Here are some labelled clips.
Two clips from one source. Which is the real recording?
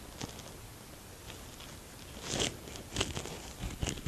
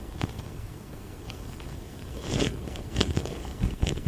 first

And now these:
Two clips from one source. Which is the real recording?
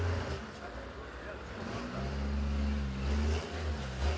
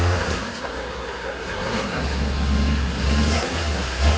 first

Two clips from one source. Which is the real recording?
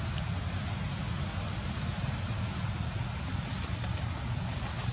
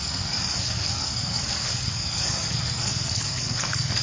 first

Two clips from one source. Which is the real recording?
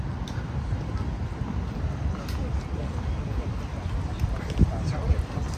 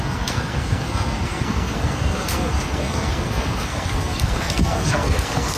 first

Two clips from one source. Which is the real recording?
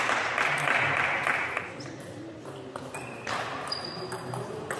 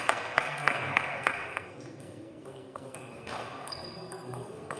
first